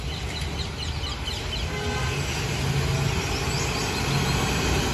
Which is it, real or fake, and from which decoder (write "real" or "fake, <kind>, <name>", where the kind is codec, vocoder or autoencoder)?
real